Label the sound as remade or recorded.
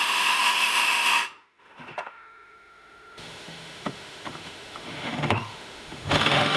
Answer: remade